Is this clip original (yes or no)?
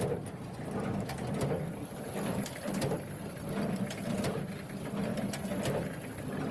yes